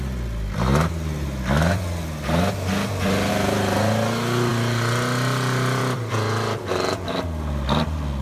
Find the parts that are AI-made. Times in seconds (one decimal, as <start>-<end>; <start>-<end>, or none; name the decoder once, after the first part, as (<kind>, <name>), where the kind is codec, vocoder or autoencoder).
none